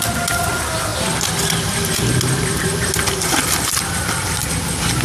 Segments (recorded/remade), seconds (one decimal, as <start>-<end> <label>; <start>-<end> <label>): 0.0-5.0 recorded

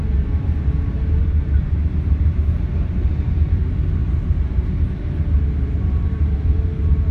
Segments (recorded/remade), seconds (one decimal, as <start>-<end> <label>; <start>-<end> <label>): 0.0-1.2 recorded; 1.2-3.6 remade; 3.6-4.0 recorded; 4.0-6.6 remade; 6.6-7.1 recorded

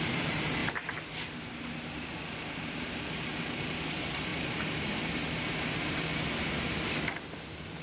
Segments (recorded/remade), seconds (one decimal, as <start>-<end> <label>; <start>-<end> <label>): 0.0-0.6 remade; 0.6-2.6 recorded; 2.6-7.8 remade

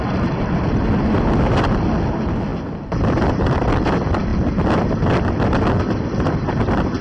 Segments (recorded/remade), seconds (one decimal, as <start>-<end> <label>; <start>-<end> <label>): 0.0-2.5 recorded; 2.5-3.7 remade; 3.7-7.0 recorded

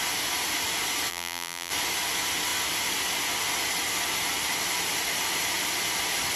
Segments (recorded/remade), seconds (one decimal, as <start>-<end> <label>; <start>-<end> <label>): 0.0-1.1 recorded; 1.1-1.7 remade; 1.7-6.4 recorded

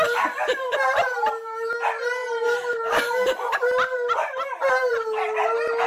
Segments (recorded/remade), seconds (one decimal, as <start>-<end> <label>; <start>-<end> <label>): 0.0-5.9 remade